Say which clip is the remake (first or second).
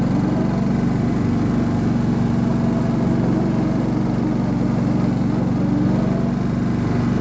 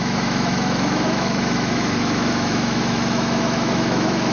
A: second